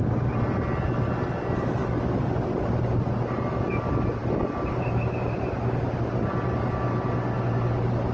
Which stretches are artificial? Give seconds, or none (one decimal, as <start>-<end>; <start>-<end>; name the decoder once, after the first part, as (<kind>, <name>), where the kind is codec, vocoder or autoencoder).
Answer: none